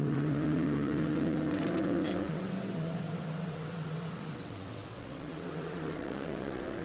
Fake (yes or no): yes